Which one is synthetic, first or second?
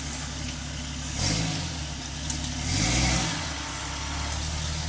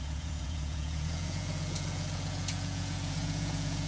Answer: second